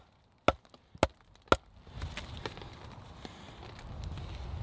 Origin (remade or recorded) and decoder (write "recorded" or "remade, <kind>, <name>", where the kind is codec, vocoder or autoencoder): recorded